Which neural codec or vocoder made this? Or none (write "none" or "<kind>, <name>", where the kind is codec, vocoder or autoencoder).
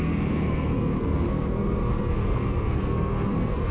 codec, SNAC